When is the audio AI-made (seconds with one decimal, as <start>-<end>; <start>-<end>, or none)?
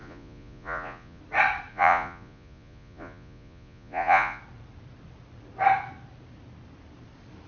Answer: 0.0-1.2; 1.7-4.4